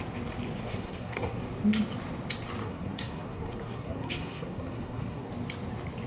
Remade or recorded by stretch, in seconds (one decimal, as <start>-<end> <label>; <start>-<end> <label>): 0.0-0.6 recorded; 0.6-1.4 remade; 1.4-2.6 recorded; 2.6-5.3 remade; 5.3-6.1 recorded